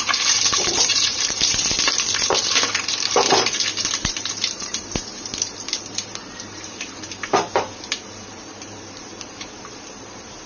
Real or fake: fake